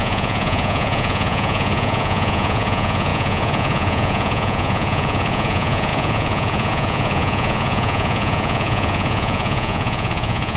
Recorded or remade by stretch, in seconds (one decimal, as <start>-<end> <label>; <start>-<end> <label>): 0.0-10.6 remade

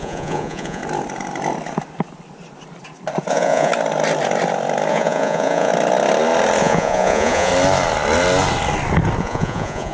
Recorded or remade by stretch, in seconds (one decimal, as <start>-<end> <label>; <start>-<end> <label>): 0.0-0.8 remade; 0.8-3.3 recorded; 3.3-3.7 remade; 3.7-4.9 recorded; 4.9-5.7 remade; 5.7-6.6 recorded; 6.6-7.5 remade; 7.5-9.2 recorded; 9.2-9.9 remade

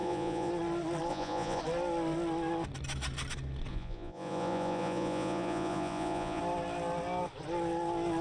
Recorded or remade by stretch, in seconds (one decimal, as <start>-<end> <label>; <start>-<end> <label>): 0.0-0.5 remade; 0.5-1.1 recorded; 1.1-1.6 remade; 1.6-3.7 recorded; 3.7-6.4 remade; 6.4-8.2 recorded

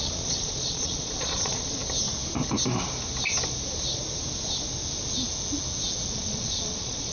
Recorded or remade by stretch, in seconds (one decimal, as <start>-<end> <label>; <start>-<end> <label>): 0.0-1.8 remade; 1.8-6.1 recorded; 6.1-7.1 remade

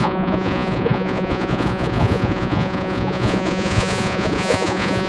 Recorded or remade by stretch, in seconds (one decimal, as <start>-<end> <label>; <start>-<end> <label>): 0.0-5.1 remade

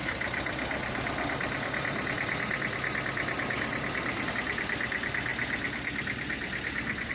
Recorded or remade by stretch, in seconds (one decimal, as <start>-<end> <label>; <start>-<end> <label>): 0.0-7.1 recorded

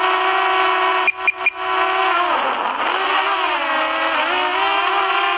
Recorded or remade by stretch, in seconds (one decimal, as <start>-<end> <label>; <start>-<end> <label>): 0.0-5.4 recorded